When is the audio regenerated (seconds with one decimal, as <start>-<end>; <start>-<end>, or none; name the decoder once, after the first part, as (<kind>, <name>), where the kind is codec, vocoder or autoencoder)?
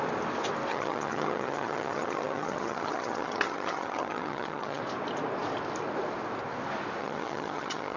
0.7-4.8 (vocoder, HiFi-GAN); 7.0-8.0